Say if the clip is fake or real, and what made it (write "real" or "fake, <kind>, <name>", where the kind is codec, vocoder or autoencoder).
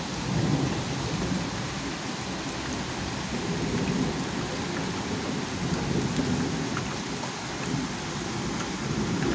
real